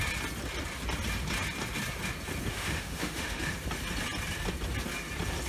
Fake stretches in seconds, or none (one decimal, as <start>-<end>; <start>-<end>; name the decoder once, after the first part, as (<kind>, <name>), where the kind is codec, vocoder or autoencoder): 2.5-3.5 (autoencoder, DAC-VAE)